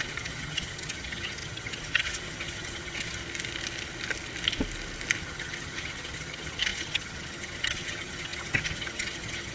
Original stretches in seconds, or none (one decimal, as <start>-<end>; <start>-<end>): 3.2-5.2